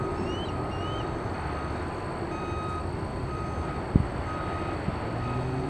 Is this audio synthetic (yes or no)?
no